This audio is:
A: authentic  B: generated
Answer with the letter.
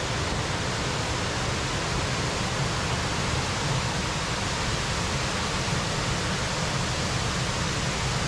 A